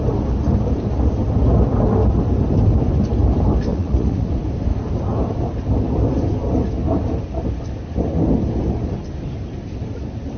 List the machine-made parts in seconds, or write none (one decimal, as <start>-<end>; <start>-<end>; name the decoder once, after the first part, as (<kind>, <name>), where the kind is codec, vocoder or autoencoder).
3.7-4.3 (vocoder, Vocos)